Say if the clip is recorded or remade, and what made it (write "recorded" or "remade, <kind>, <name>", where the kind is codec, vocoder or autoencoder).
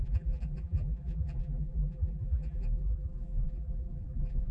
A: remade, vocoder, BigVGAN v2